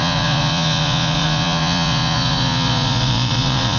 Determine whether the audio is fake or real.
fake